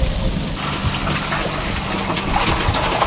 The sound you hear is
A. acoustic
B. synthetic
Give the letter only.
A